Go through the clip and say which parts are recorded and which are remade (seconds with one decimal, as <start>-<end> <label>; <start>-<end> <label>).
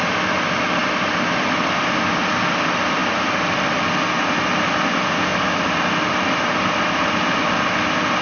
0.0-8.2 recorded